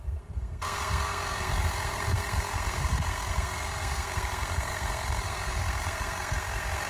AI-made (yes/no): yes